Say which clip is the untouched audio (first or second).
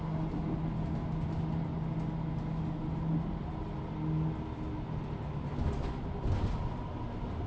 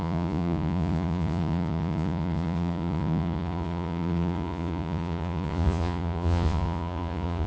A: first